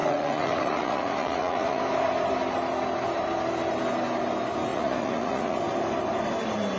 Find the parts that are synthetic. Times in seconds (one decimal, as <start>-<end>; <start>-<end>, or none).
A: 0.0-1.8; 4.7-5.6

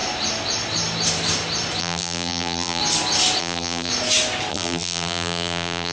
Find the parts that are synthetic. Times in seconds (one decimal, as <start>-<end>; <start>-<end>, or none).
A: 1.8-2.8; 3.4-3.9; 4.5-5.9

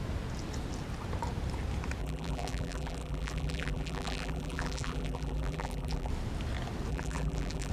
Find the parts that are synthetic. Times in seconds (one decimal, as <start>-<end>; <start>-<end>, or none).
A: 2.0-6.1; 6.9-7.7

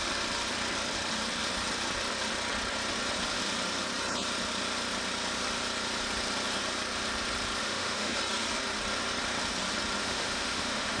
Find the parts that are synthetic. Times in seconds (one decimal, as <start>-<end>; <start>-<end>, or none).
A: 7.6-8.2; 10.0-11.0

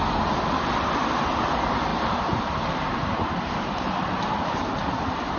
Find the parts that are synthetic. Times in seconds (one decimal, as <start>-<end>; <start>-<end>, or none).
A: 1.9-5.4

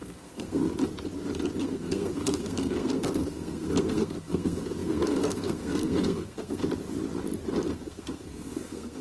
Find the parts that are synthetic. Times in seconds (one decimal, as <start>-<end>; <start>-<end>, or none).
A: 0.0-0.6; 1.6-6.6; 7.7-9.0